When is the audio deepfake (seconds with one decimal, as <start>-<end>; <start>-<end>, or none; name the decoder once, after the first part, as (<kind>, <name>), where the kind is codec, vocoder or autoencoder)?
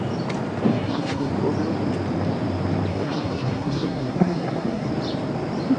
0.7-1.3 (codec, SNAC); 2.9-4.9